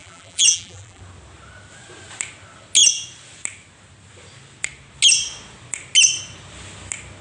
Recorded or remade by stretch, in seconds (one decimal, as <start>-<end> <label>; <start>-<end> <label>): 0.0-1.0 remade; 1.0-7.2 recorded